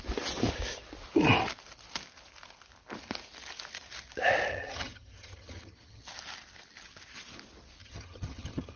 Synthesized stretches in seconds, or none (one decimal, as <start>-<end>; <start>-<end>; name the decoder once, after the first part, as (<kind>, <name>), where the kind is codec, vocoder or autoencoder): 4.5-6.0 (vocoder, HiFi-GAN); 7.8-8.8